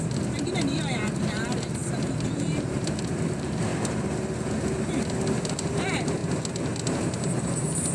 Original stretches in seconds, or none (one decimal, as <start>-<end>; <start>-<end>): 3.7-4.6; 6.2-7.0